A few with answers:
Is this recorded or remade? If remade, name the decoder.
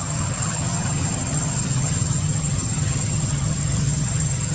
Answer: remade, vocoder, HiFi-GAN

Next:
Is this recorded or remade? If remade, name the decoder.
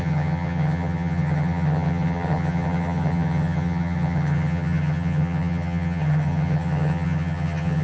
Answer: remade, vocoder, HiFi-GAN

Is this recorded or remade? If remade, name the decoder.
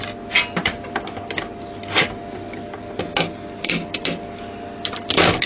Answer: recorded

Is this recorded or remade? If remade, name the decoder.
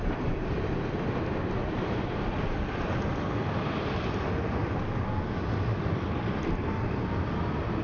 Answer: recorded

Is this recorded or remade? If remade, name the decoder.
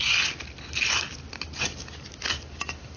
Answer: recorded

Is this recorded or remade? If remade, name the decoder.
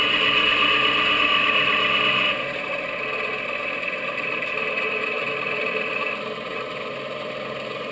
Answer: recorded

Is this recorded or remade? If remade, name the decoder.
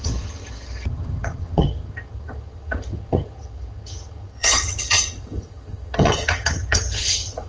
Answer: remade, vocoder, HiFi-GAN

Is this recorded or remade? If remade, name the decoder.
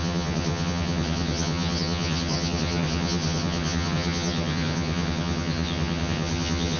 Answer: remade, vocoder, HiFi-GAN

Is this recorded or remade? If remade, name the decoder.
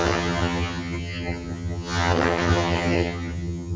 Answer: remade, vocoder, HiFi-GAN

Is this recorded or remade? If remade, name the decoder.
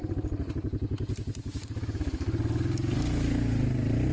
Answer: recorded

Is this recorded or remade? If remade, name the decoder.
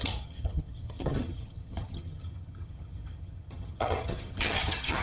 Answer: remade, vocoder, HiFi-GAN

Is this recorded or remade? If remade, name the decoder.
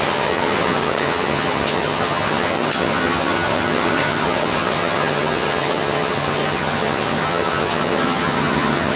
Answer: remade, vocoder, HiFi-GAN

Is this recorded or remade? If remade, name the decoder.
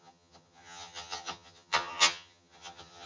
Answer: remade, vocoder, HiFi-GAN